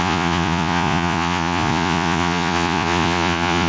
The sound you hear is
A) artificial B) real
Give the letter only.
A